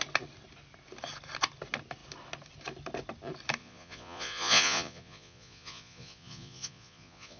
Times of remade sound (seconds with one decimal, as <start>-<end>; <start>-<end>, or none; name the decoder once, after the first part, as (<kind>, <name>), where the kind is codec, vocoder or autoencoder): 3.6-7.4 (vocoder, Vocos)

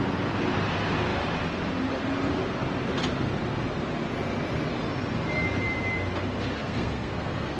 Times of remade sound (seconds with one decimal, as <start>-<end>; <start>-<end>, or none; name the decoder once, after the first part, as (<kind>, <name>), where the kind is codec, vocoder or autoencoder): 6.6-7.6 (codec, SNAC)

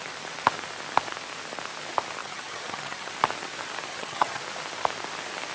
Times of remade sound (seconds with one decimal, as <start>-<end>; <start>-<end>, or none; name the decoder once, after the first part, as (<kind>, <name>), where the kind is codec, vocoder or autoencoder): 2.2-3.1 (vocoder, HiFi-GAN); 3.9-4.4

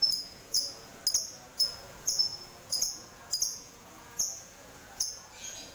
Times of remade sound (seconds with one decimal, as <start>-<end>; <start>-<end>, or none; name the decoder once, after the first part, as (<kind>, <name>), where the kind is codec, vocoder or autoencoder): 0.0-1.0 (vocoder, Vocos); 1.6-5.7

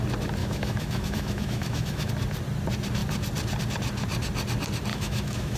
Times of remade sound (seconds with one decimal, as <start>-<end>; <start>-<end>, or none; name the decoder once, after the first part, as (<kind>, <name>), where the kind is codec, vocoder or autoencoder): 0.4-2.1 (autoencoder, DAC-VAE); 4.9-5.6